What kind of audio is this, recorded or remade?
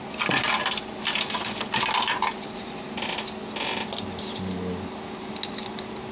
recorded